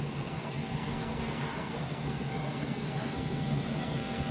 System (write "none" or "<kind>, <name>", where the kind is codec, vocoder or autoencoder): codec, SNAC